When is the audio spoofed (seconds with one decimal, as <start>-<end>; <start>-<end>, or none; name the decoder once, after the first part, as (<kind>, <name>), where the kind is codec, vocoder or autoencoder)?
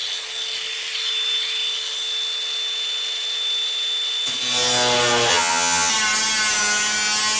5.3-5.9 (vocoder, HiFi-GAN)